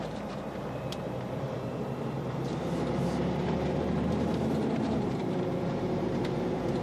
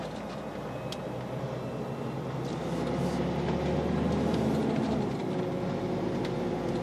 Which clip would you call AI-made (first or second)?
first